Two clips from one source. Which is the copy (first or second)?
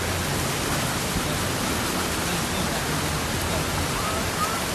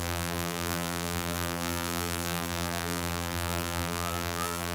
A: second